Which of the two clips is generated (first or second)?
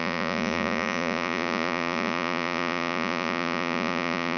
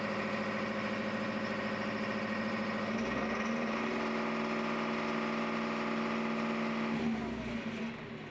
first